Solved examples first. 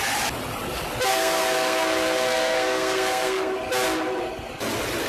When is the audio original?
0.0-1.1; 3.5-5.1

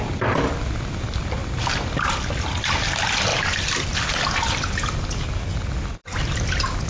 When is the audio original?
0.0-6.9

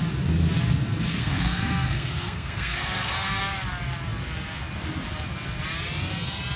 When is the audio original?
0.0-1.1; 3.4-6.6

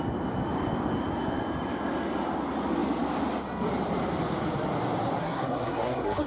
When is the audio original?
0.0-5.2

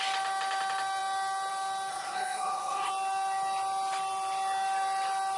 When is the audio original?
0.0-1.9; 2.9-5.4

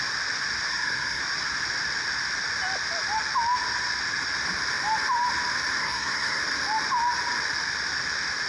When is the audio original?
0.0-0.7; 1.2-5.8; 6.4-8.5